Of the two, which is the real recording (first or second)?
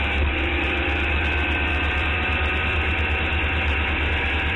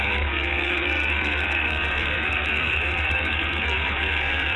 first